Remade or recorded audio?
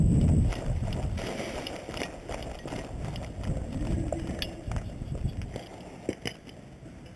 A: recorded